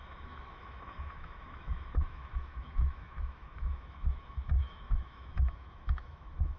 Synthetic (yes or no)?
yes